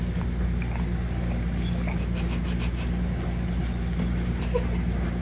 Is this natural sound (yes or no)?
yes